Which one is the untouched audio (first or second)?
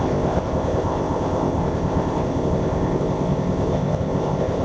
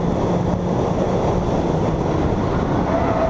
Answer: second